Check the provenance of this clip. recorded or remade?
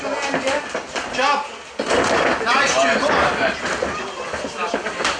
recorded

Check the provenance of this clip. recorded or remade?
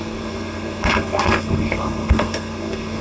remade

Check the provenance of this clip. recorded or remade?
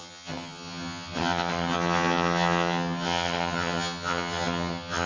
remade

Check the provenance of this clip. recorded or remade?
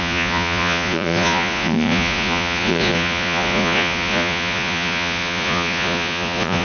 remade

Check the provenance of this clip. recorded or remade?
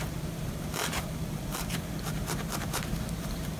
remade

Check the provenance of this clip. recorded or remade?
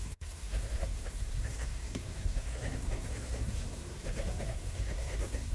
remade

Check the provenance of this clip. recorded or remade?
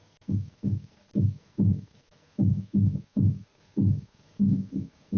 remade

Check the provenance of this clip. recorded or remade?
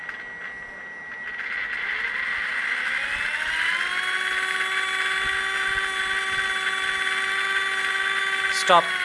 recorded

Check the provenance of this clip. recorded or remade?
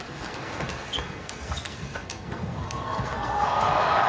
remade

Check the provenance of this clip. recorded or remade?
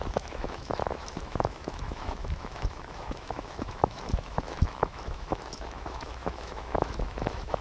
remade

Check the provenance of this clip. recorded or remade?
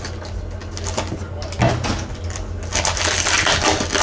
recorded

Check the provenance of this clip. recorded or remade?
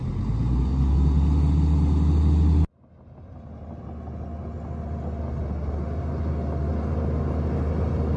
recorded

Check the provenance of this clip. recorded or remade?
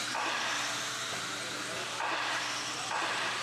recorded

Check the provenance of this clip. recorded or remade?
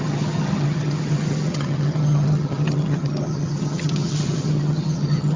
remade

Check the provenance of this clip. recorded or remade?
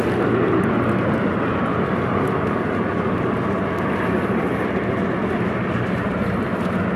recorded